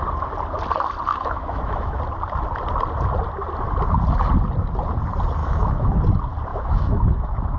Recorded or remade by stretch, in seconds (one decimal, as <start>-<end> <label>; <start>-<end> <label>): 0.0-1.1 recorded; 1.1-2.0 remade; 2.0-5.4 recorded; 5.4-6.0 remade; 6.0-6.5 recorded; 6.5-7.6 remade